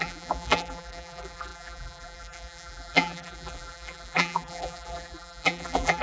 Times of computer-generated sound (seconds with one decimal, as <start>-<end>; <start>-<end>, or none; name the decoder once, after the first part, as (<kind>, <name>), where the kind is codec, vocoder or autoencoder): 0.0-6.0 (vocoder, BigVGAN v2)